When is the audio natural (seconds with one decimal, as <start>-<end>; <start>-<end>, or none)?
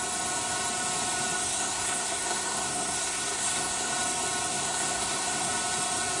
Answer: 0.0-1.4; 3.9-4.5; 5.5-6.2